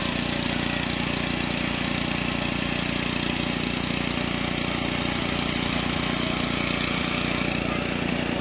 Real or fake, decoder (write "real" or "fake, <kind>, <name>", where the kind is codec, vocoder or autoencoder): real